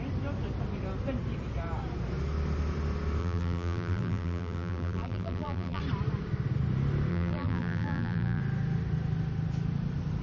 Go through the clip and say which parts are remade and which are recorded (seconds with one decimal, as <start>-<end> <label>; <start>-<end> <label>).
0.0-3.2 recorded; 3.2-5.8 remade; 5.8-7.1 recorded; 7.1-8.4 remade; 8.4-10.2 recorded